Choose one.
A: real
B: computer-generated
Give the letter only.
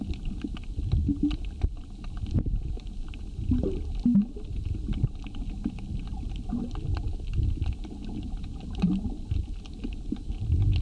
A